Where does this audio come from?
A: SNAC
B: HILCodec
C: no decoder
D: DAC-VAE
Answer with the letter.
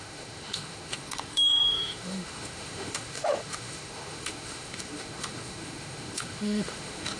D